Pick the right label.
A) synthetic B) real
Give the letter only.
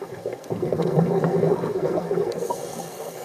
A